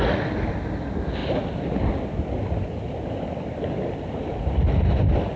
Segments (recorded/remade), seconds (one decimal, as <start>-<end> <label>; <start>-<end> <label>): 0.0-5.4 recorded